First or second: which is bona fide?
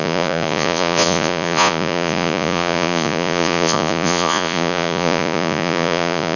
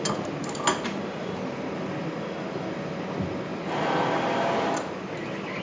second